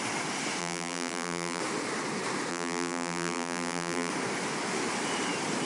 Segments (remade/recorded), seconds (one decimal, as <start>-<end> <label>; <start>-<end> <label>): 0.0-0.6 recorded; 0.6-1.6 remade; 1.6-2.5 recorded; 2.5-4.1 remade; 4.1-5.7 recorded